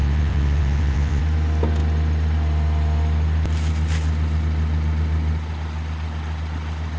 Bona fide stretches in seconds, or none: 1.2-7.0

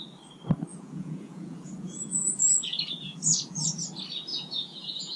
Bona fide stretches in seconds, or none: 0.0-0.7; 3.8-4.3

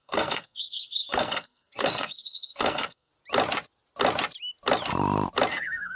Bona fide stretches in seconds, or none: 3.1-5.5

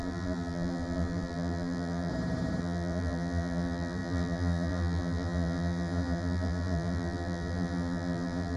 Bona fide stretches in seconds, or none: 2.1-2.6

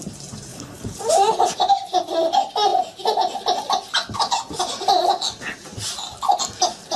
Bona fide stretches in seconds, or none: 0.0-0.5; 1.0-7.0

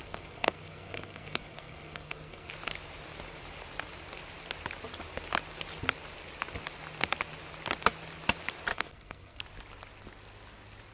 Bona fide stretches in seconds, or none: 2.5-8.7; 9.4-10.9